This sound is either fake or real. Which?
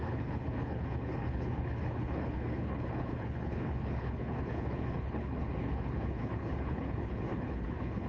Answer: fake